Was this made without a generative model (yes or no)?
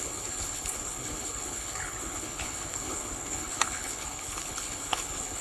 no